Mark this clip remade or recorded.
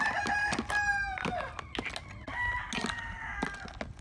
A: recorded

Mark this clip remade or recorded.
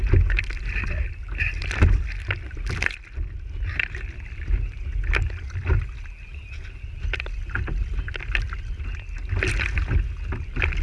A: recorded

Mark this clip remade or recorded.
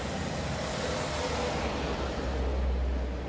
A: recorded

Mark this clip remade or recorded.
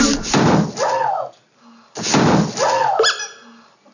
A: recorded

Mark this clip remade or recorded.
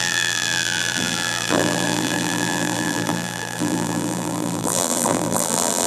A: remade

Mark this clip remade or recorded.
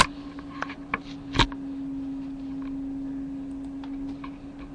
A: recorded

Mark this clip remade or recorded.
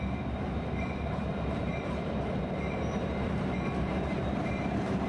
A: remade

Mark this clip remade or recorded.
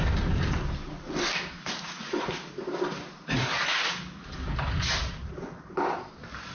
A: recorded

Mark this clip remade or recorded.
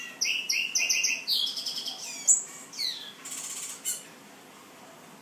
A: recorded